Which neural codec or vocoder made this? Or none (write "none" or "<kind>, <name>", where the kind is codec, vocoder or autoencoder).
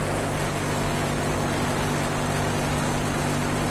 none